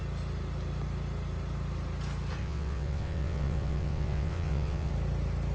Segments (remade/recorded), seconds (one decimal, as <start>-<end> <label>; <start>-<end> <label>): 0.0-2.4 recorded; 2.4-4.9 remade; 4.9-5.5 recorded